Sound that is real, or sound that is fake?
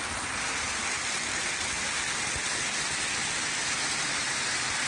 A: real